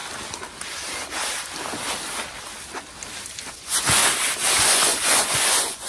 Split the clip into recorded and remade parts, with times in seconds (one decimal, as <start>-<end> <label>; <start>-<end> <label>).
0.0-3.5 recorded; 3.5-4.0 remade; 4.0-4.6 recorded; 4.6-5.9 remade